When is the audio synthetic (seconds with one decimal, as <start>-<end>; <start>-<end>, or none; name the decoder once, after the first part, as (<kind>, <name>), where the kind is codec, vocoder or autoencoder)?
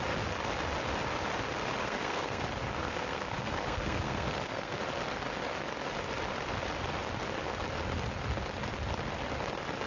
1.8-2.4 (codec, SNAC); 2.8-4.8